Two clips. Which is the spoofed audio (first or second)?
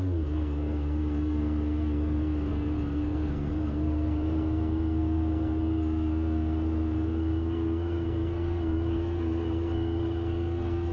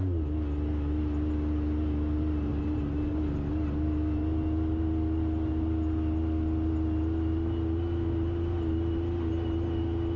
first